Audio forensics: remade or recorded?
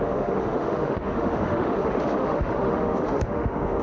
remade